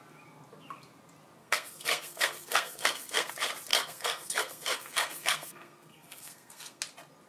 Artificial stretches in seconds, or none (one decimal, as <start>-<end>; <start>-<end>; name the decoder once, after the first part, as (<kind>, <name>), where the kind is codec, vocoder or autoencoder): 1.4-3.3 (codec, SNAC); 3.7-6.8